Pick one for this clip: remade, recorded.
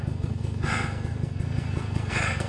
remade